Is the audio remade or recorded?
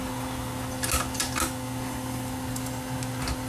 recorded